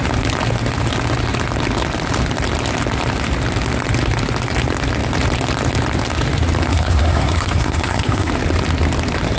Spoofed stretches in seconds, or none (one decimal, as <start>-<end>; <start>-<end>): 6.7-8.3